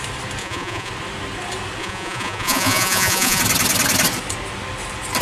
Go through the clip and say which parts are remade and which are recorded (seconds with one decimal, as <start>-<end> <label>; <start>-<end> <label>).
0.0-0.4 recorded; 0.4-0.9 remade; 0.9-1.8 recorded; 1.8-3.4 remade; 3.4-5.2 recorded